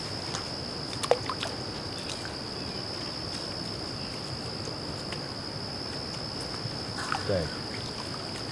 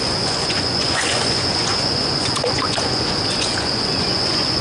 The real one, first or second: first